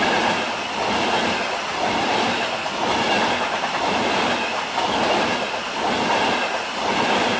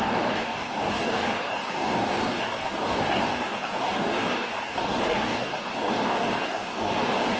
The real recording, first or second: first